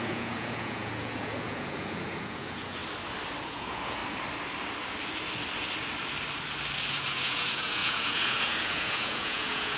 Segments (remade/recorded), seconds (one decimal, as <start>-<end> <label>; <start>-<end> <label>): 0.0-2.8 remade; 2.8-3.4 recorded; 3.4-4.0 remade; 4.0-6.9 recorded; 6.9-9.8 remade